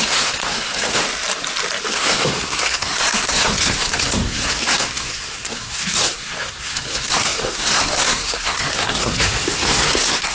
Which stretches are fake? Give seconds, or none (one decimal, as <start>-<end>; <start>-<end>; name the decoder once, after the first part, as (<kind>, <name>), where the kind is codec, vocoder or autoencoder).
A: 0.0-1.0 (codec, SNAC); 1.9-10.3